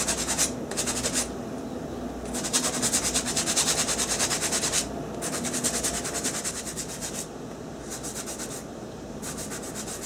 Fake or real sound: real